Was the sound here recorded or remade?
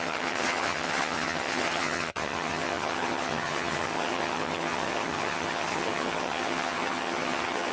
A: remade